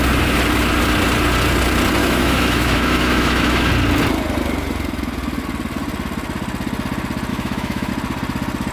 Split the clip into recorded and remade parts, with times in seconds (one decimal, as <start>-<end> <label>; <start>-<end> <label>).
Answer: 0.0-2.0 recorded; 2.0-3.7 remade; 3.7-7.3 recorded; 7.3-7.9 remade; 7.9-8.7 recorded